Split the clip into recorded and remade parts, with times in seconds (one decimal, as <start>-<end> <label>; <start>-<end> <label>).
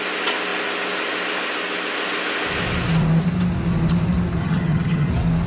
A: 0.0-4.4 recorded; 4.4-5.1 remade; 5.1-5.5 recorded